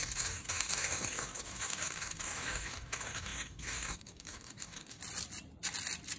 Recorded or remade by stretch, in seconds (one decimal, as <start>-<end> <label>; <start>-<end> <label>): 0.0-5.0 remade; 5.0-6.2 recorded